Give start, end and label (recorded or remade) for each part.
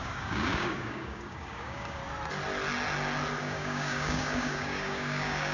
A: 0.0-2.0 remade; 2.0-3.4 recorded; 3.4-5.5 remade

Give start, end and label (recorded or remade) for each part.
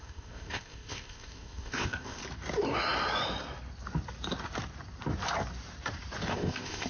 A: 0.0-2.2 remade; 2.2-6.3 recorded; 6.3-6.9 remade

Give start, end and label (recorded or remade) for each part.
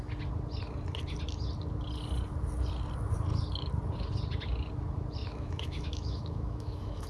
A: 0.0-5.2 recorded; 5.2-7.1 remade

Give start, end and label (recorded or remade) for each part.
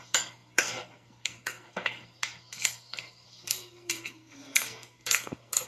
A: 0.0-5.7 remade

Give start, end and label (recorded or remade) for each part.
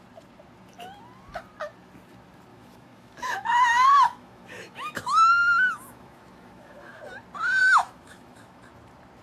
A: 0.0-2.5 recorded; 2.5-7.0 remade; 7.0-7.6 recorded; 7.6-8.6 remade; 8.6-9.2 recorded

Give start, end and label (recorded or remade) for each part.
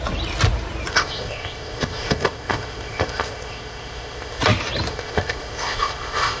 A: 0.0-0.9 recorded; 0.9-4.4 remade; 4.4-4.9 recorded; 4.9-6.4 remade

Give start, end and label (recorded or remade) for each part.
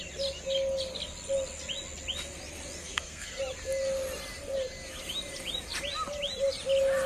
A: 0.0-2.8 recorded; 2.8-3.4 remade; 3.4-7.1 recorded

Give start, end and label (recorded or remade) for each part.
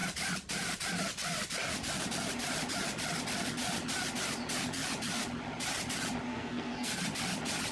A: 0.0-6.3 recorded; 6.3-7.0 remade; 7.0-7.7 recorded